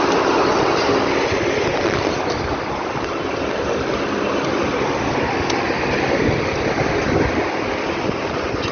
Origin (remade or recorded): recorded